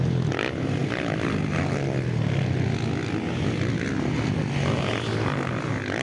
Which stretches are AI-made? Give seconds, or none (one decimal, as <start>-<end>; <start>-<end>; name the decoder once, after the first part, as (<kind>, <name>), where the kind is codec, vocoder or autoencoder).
none